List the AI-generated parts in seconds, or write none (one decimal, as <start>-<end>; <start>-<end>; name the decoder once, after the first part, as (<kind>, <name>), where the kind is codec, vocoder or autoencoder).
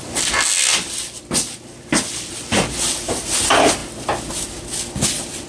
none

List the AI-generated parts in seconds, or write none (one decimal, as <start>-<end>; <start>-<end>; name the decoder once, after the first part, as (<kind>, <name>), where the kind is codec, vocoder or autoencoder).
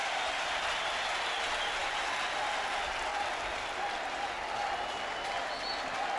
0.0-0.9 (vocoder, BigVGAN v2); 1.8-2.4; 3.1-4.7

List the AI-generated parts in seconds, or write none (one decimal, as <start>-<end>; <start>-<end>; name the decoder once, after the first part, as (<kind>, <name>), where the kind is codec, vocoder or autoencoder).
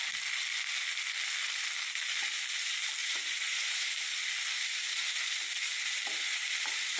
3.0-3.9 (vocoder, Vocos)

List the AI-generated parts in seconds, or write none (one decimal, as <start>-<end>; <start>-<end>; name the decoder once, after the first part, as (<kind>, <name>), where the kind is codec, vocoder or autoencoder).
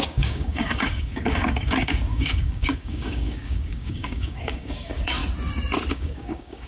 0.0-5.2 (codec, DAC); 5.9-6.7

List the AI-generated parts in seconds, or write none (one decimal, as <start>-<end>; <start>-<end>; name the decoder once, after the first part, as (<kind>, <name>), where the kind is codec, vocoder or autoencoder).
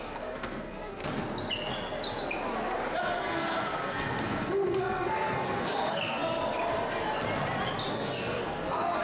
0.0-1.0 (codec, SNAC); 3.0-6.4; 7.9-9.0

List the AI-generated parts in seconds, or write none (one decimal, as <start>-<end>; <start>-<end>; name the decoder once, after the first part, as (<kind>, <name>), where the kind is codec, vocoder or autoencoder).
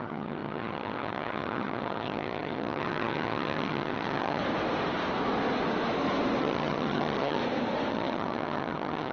0.0-4.4 (vocoder, HiFi-GAN); 6.4-7.4; 7.9-9.1